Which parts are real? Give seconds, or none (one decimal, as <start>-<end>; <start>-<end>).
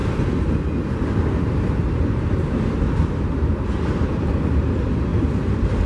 0.0-5.9